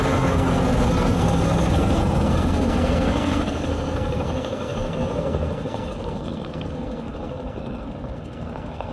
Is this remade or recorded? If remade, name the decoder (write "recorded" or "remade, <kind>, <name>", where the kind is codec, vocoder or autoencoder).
remade, codec, SNAC